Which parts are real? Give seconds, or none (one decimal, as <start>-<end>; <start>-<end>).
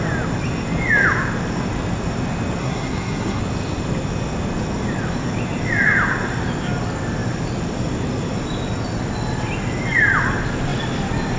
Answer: 0.0-2.6; 3.4-11.4